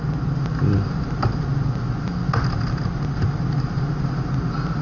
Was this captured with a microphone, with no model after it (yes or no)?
yes